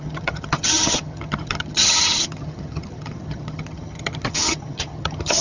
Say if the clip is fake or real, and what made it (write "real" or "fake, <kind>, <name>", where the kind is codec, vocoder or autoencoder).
fake, vocoder, HiFi-GAN